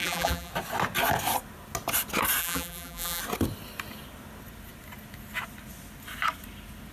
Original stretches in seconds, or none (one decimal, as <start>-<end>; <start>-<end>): 0.5-2.4; 3.2-6.9